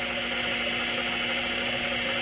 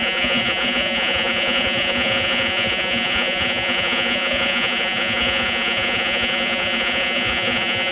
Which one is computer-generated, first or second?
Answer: second